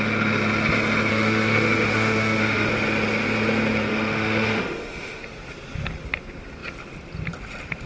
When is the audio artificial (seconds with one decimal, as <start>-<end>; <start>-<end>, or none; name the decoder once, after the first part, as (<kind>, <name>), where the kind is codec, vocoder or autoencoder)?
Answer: 1.1-2.7 (autoencoder, DAC-VAE); 3.9-5.2